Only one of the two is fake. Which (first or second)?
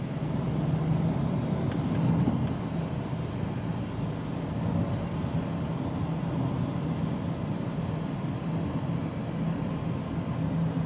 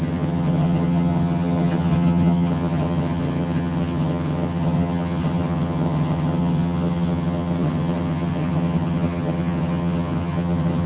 second